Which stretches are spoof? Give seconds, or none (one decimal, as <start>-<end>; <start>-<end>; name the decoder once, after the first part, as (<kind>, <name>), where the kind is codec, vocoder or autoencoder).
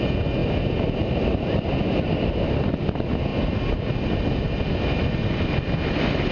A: none